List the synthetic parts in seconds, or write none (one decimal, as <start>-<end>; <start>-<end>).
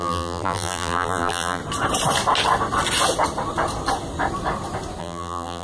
0.0-1.6; 5.0-5.6